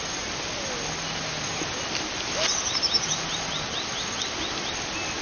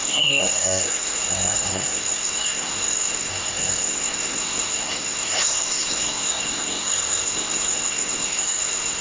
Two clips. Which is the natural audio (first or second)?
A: first